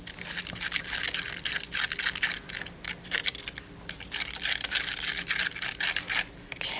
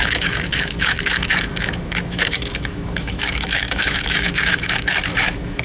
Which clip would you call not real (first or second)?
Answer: second